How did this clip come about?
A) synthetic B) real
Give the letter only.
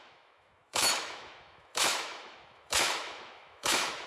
A